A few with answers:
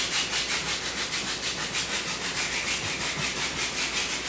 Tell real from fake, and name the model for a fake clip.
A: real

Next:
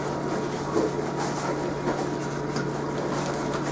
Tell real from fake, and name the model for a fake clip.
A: real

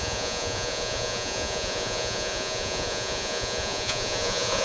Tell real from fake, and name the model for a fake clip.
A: fake, vocoder, Vocos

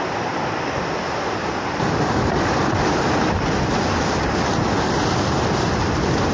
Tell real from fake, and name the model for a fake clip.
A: real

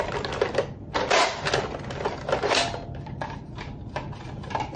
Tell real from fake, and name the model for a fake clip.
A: real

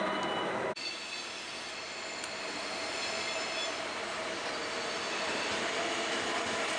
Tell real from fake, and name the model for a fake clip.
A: real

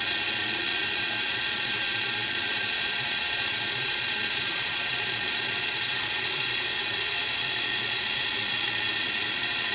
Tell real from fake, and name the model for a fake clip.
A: fake, vocoder, Vocos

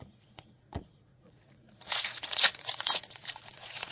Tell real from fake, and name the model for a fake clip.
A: fake, vocoder, Vocos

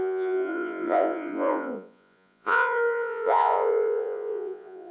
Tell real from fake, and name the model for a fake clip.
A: fake, vocoder, Vocos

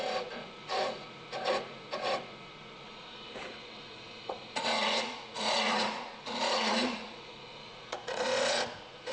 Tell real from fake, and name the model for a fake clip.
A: fake, vocoder, Vocos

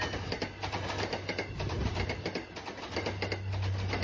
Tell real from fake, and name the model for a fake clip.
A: real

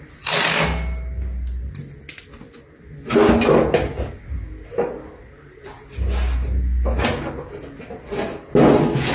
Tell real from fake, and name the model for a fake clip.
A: real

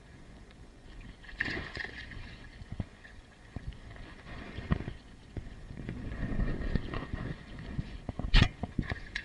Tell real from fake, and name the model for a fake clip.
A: fake, vocoder, Vocos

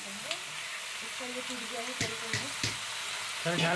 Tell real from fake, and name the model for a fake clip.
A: real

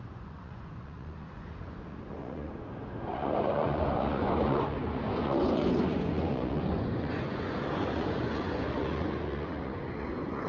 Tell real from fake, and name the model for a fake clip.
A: fake, vocoder, Vocos